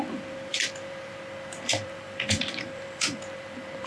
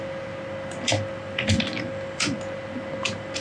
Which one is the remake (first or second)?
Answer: first